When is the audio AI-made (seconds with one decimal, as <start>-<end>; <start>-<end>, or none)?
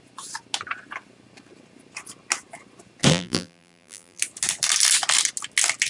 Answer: 3.1-4.2